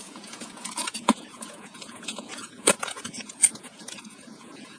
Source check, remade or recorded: remade